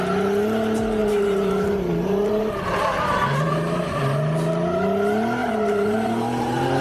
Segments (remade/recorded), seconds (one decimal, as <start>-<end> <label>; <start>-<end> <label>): 0.0-1.0 recorded; 1.0-4.0 remade; 4.0-5.4 recorded; 5.4-6.8 remade